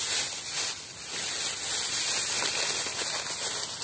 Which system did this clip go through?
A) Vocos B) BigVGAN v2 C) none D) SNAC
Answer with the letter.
C